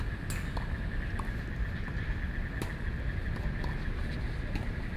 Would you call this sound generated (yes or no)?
no